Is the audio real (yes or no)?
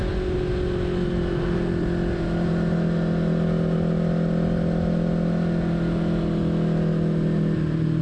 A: yes